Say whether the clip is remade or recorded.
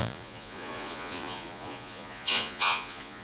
remade